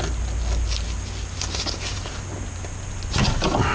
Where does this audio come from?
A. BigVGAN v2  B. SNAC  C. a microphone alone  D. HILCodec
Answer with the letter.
C